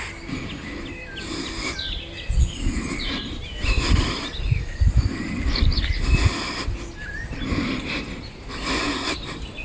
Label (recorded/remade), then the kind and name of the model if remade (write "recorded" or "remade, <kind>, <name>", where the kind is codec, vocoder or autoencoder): recorded